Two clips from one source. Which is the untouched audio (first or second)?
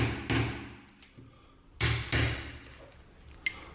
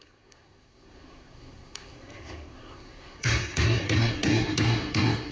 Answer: first